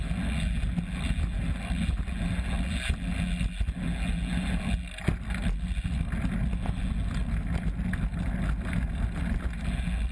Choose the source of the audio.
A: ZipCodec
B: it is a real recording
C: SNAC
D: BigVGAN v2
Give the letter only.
B